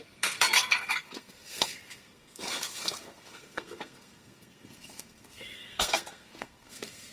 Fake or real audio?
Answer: fake